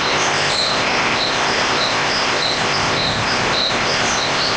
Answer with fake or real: fake